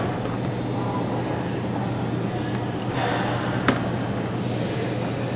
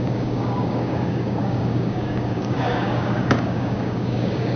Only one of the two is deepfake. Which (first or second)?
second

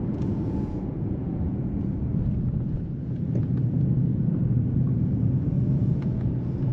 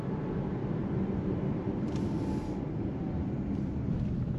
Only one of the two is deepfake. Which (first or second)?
first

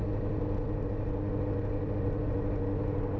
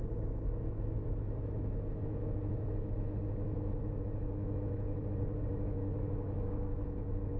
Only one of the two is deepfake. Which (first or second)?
second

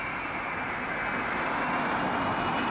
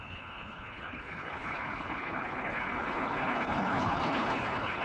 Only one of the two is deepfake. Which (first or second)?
second